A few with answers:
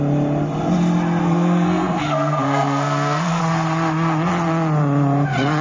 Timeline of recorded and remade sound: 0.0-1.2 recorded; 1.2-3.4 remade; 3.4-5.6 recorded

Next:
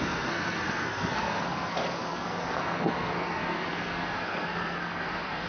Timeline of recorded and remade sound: 0.0-5.5 remade

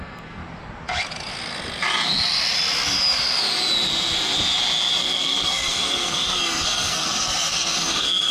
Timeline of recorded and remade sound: 0.0-0.4 remade; 0.4-5.0 recorded; 5.0-8.3 remade

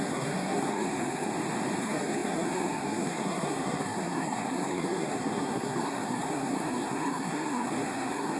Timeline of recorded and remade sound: 0.0-1.3 remade; 1.3-1.8 recorded; 1.8-8.4 remade

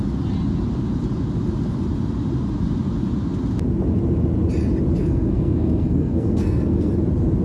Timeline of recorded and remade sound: 0.0-5.0 recorded; 5.0-6.9 remade; 6.9-7.4 recorded

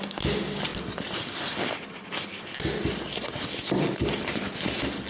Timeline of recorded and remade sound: 0.0-5.1 recorded

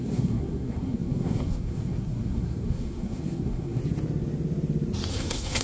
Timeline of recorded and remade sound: 0.0-3.8 remade; 3.8-5.1 recorded; 5.1-5.6 remade